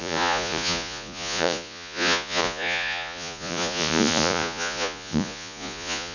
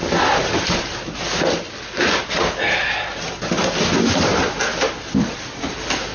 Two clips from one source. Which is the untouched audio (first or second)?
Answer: second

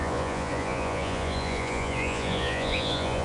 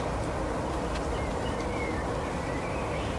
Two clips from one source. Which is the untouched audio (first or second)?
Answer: second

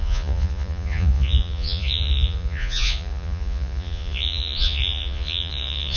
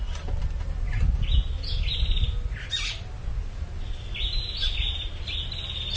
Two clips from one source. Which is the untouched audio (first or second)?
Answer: second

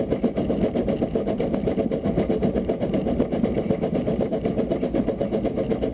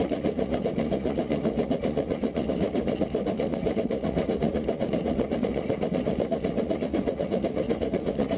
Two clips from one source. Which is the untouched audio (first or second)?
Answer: first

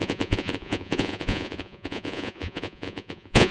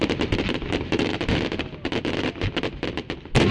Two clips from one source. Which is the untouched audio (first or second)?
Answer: second